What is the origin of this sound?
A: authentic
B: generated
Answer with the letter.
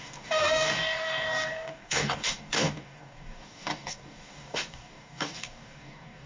B